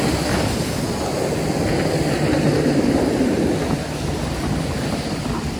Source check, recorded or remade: recorded